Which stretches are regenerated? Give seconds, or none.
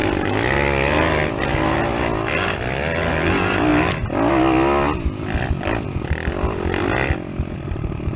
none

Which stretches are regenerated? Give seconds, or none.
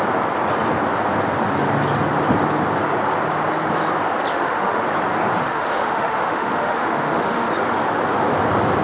4.3-4.8 (autoencoder, DAC-VAE); 5.4-7.5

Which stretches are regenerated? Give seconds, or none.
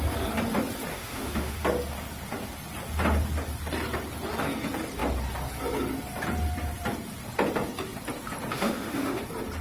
0.9-1.6 (autoencoder, DAC-VAE); 8.5-9.2